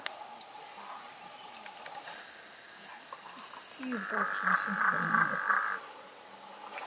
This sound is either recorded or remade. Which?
recorded